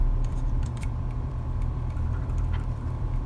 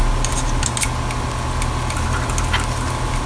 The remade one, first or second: first